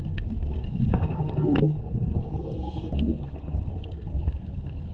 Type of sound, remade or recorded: remade